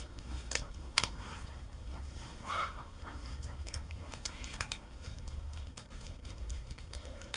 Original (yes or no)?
no